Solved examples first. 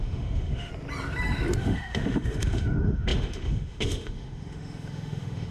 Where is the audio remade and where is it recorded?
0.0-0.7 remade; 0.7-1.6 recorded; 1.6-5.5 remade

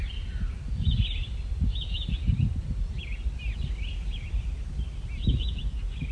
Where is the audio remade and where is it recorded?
0.0-6.1 recorded

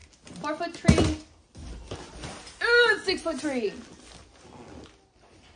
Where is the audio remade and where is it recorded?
0.0-5.6 recorded

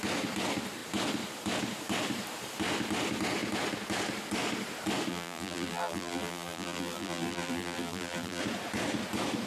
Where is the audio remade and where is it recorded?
0.0-5.1 recorded; 5.1-8.4 remade; 8.4-9.5 recorded

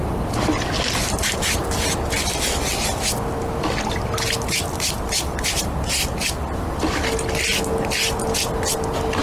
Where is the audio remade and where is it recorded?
0.0-1.6 recorded; 1.6-3.6 remade; 3.6-9.2 recorded

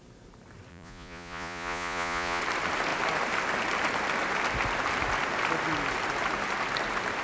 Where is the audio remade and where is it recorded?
0.0-0.7 recorded; 0.7-2.4 remade; 2.4-7.2 recorded

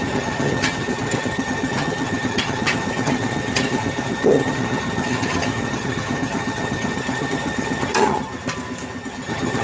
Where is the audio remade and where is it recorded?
0.0-8.3 remade; 8.3-9.0 recorded; 9.0-9.6 remade